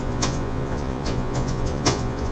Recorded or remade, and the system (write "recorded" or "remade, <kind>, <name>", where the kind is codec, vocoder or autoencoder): remade, vocoder, Vocos